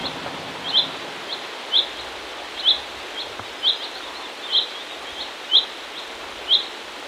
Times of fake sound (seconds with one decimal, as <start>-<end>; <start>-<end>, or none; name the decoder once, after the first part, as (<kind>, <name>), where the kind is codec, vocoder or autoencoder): none

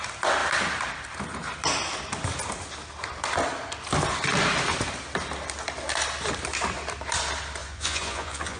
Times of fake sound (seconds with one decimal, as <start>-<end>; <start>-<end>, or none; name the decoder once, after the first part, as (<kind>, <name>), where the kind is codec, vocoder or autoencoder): 7.6-8.6 (vocoder, Vocos)

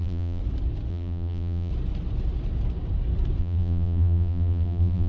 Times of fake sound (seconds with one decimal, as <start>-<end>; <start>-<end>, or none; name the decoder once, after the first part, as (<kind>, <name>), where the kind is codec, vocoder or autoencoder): 0.0-0.4 (vocoder, BigVGAN v2); 0.9-1.7; 3.4-5.1

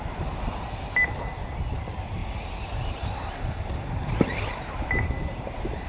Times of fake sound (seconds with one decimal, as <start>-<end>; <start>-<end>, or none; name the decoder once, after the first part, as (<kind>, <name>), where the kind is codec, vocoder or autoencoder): none

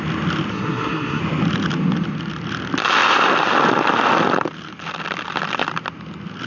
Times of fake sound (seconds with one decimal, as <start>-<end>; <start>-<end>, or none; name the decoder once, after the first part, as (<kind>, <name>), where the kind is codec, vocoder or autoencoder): 0.5-1.2 (codec, SNAC)